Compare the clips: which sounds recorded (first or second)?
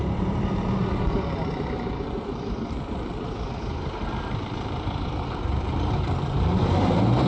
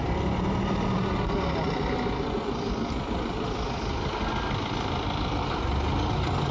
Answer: second